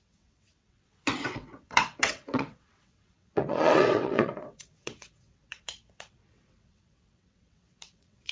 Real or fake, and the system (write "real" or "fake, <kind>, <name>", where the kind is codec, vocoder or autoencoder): fake, vocoder, WaveNeXt